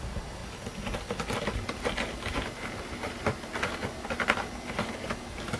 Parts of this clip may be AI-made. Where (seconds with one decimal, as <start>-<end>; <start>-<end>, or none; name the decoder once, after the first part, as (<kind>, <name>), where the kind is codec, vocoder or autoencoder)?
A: none